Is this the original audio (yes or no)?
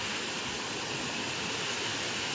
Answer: yes